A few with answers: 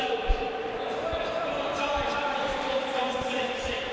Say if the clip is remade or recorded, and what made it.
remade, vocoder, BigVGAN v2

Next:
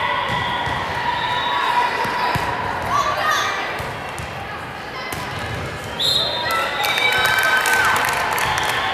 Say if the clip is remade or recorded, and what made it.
recorded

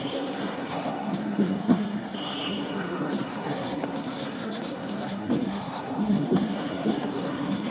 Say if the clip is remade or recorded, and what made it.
remade, codec, SNAC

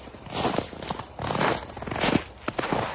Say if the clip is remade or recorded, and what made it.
recorded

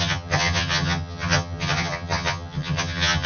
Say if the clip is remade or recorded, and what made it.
remade, vocoder, HiFi-GAN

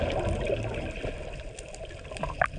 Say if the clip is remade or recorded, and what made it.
recorded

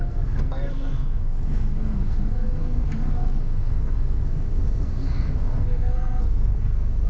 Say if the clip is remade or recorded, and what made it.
remade, codec, SNAC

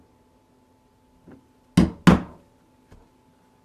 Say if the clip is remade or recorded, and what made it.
recorded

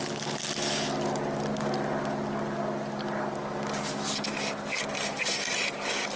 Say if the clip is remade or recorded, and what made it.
recorded